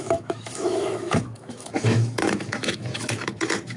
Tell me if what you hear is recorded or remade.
remade